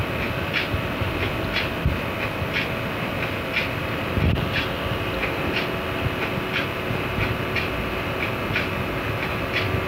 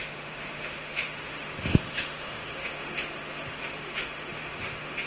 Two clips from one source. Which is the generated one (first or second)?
second